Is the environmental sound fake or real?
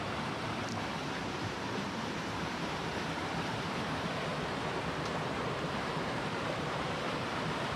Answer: fake